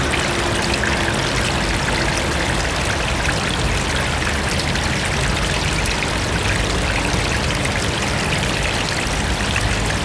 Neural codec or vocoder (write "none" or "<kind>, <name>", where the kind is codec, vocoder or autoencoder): none